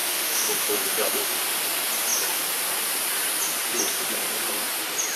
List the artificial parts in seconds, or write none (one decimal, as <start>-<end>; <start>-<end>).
0.0-1.4